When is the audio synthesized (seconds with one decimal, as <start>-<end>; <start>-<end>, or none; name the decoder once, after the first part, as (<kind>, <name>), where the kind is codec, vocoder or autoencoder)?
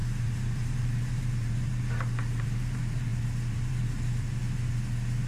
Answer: 0.0-4.4 (vocoder, BigVGAN v2)